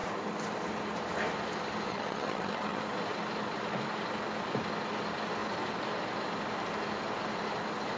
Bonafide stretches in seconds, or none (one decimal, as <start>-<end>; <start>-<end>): 0.0-1.9; 2.8-8.0